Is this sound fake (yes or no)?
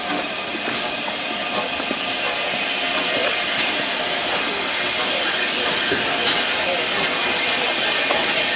no